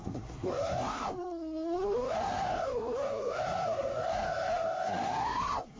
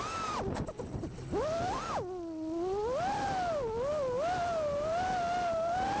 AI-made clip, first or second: first